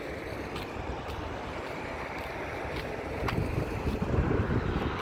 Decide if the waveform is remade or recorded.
recorded